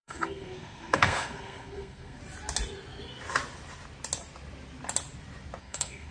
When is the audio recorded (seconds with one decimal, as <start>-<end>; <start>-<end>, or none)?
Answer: 2.2-5.6